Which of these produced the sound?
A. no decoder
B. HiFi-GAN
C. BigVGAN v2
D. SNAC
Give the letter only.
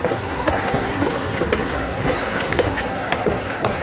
D